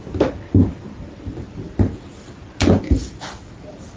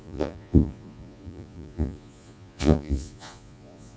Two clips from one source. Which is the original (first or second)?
first